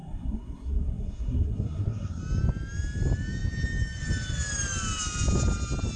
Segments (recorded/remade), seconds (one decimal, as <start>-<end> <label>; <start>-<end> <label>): 0.0-2.2 remade; 2.2-6.0 recorded